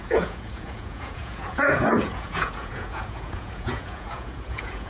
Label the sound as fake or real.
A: fake